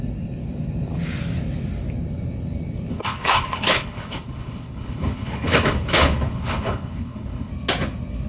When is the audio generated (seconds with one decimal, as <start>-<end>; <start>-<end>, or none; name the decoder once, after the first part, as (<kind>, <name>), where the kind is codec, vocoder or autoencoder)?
2.9-7.5 (codec, HILCodec)